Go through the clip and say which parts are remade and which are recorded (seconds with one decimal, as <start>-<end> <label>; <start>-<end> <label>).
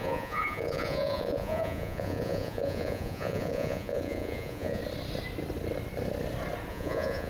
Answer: 0.0-4.8 remade; 4.8-6.7 recorded; 6.7-7.3 remade